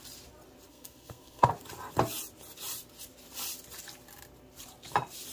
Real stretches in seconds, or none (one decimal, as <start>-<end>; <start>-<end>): 0.0-0.7; 1.5-5.3